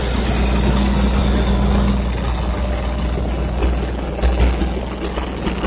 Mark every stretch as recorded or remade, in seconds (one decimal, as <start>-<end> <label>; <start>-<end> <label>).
0.0-5.7 recorded